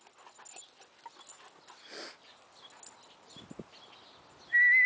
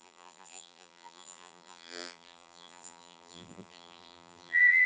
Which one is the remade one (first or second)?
second